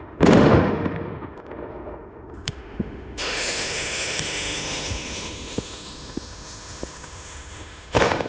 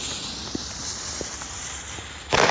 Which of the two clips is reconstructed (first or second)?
first